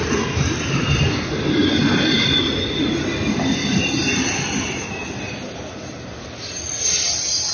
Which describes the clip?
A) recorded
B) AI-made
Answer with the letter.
A